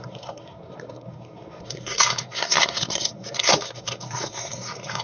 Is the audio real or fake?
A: fake